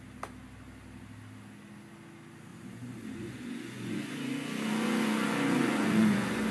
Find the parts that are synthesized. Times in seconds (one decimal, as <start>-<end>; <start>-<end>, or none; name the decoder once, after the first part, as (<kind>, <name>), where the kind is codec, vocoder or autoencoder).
2.5-6.5 (vocoder, Vocos)